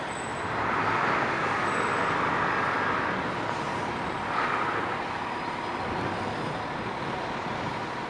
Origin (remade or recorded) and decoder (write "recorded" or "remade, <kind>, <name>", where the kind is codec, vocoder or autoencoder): recorded